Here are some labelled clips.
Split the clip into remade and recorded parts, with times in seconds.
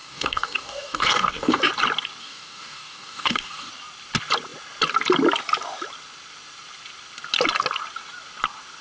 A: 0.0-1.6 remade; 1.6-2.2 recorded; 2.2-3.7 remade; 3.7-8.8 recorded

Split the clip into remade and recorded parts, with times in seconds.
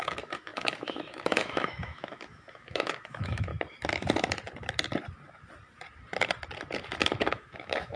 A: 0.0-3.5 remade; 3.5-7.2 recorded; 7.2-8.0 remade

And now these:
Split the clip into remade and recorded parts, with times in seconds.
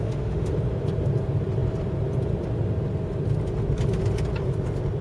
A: 0.0-0.5 remade; 0.5-5.0 recorded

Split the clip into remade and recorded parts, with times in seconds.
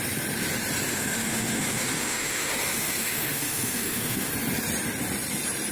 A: 0.0-0.9 recorded; 0.9-4.3 remade; 4.3-5.7 recorded